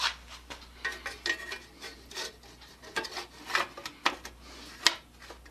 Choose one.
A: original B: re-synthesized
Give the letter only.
A